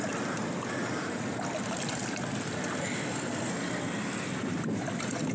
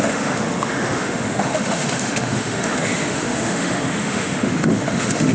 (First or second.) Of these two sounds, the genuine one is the first